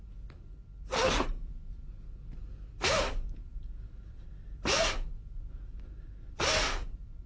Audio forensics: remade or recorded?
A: recorded